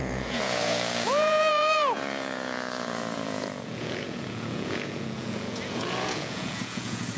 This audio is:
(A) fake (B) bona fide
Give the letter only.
A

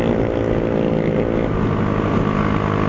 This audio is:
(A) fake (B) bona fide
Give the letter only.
B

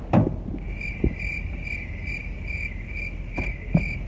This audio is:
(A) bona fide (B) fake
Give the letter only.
A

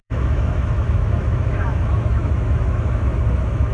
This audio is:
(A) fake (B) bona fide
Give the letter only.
A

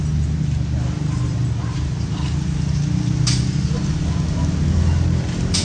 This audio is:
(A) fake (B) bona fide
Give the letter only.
B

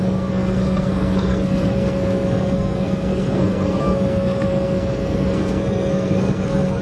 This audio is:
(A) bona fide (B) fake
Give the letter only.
B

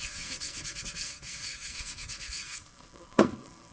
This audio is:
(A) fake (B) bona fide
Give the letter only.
A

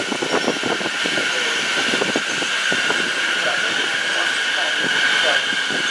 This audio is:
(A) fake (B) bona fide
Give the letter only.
B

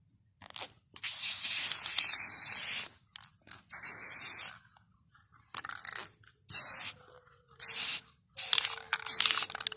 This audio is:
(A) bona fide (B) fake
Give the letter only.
A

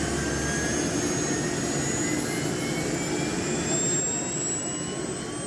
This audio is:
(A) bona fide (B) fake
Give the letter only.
A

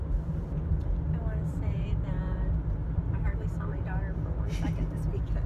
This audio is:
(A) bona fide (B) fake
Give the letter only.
A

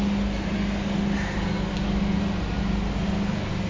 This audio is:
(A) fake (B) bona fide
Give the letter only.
B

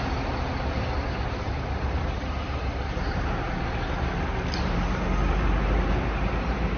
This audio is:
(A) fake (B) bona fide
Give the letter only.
A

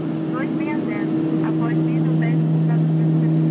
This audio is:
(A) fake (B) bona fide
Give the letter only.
B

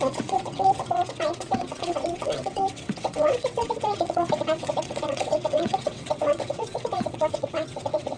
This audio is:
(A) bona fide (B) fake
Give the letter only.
B